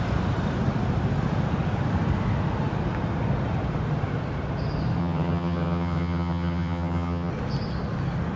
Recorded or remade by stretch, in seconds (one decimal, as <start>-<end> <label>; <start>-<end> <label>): 0.0-5.0 recorded; 5.0-7.3 remade; 7.3-8.4 recorded